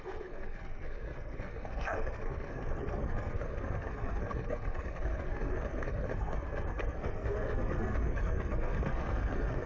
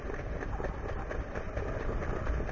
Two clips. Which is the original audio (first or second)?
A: second